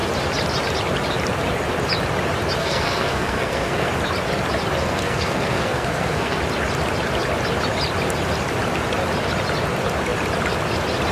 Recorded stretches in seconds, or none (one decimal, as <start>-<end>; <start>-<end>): 0.0-2.6; 3.9-4.8; 6.4-11.1